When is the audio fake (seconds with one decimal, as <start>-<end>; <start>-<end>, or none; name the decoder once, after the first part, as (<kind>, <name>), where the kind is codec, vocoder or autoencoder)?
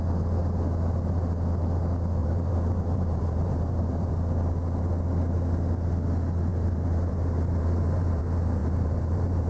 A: 2.2-4.1 (vocoder, BigVGAN v2); 6.5-8.2; 8.6-9.5